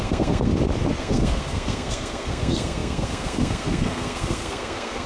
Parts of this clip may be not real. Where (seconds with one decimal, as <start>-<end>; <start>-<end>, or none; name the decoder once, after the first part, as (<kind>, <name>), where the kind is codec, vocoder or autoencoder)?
0.0-0.5 (codec, SNAC); 1.0-5.1